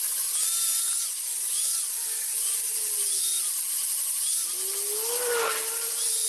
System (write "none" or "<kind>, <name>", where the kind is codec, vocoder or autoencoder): none